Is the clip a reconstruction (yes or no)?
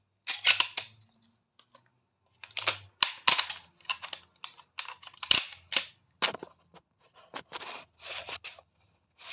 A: no